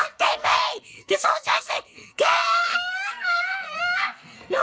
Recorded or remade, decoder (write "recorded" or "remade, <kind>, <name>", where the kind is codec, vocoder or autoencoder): remade, codec, SNAC